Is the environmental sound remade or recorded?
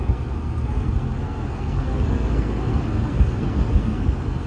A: remade